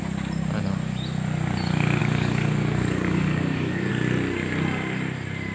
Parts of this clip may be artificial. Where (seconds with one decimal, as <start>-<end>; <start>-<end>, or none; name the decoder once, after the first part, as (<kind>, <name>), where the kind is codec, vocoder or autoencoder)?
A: 2.0-3.9 (codec, DAC)